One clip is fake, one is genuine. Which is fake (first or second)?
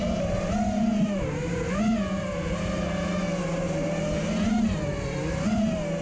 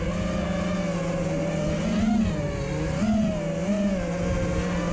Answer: first